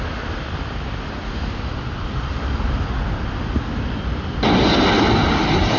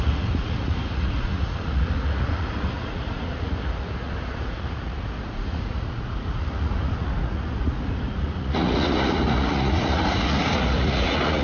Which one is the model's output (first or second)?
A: second